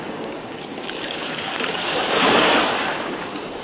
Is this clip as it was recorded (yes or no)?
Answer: no